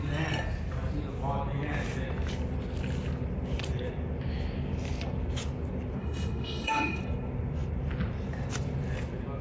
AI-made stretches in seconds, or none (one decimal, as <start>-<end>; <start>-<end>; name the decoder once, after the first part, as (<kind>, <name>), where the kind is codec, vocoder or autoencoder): 6.0-7.0 (autoencoder, DAC-VAE)